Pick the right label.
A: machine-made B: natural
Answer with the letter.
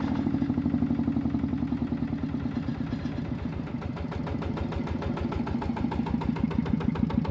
B